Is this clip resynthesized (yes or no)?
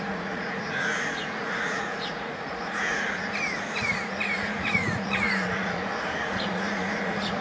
yes